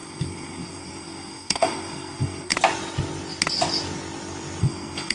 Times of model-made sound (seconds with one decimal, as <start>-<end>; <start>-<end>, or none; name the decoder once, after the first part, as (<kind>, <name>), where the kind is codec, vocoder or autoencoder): 0.0-2.5 (codec, SNAC); 4.6-5.1